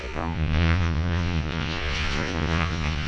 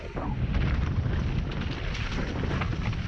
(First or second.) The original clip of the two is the second